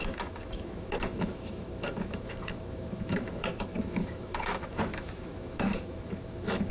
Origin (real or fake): fake